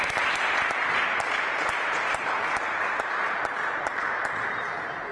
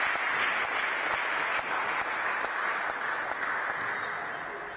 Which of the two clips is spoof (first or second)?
first